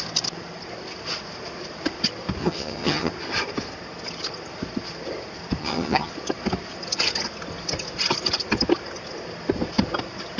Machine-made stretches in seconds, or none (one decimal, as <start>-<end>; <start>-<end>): 2.4-3.1; 5.6-6.1